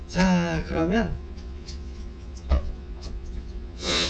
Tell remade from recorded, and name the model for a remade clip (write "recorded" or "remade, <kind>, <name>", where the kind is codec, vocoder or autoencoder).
remade, vocoder, Vocos